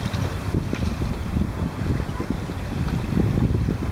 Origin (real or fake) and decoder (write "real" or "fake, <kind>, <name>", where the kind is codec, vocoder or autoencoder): fake, vocoder, BigVGAN v2